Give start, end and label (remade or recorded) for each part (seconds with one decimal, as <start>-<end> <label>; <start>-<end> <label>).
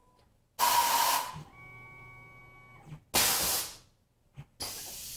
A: 0.0-5.2 recorded